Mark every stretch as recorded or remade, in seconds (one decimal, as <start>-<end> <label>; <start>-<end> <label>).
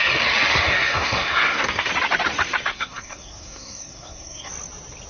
0.0-0.5 recorded; 0.5-1.9 remade; 1.9-2.7 recorded; 2.7-4.5 remade; 4.5-5.1 recorded